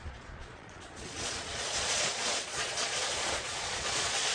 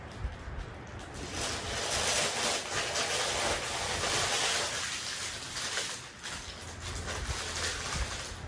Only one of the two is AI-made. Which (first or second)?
first